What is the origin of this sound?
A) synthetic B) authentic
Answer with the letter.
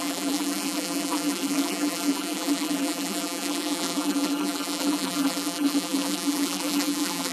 A